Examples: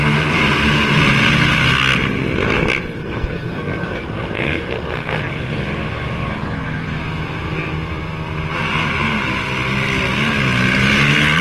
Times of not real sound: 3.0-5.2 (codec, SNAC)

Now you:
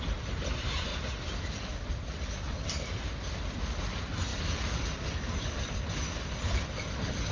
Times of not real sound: none

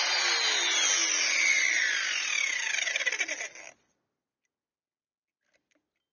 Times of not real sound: none